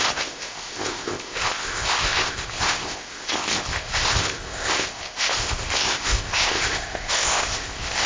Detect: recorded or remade remade